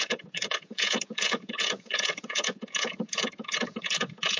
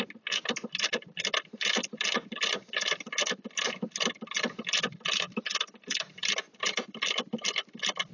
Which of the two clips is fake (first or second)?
first